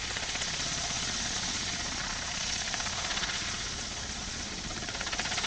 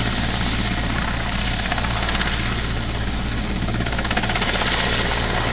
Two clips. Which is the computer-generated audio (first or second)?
first